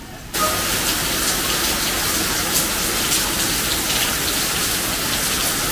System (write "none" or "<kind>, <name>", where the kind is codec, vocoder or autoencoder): none